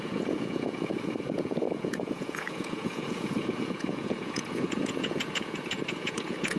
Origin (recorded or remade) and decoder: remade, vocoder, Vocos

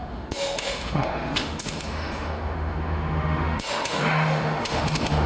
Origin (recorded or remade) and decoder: remade, autoencoder, DAC-VAE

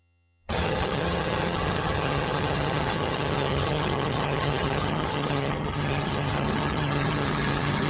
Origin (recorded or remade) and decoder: remade, vocoder, HiFi-GAN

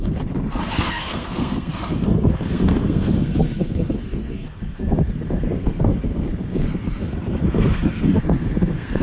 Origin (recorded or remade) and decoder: remade, codec, SNAC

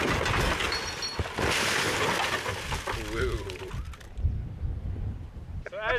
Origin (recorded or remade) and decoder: recorded